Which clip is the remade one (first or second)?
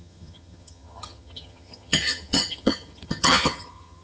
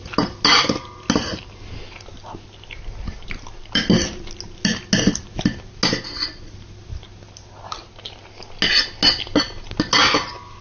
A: first